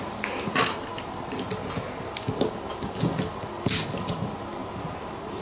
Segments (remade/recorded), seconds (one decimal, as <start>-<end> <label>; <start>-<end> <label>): 0.0-4.6 recorded; 4.6-5.4 remade